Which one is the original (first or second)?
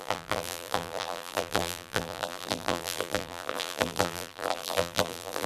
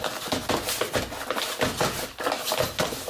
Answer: second